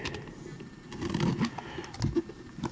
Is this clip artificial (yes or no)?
no